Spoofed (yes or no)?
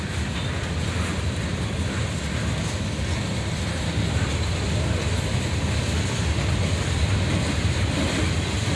no